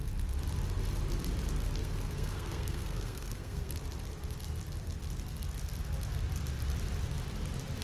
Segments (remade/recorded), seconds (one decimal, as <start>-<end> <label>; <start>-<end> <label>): 0.0-1.8 recorded; 1.8-3.7 remade; 3.7-7.8 recorded